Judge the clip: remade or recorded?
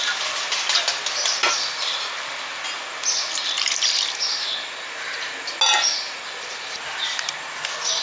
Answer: recorded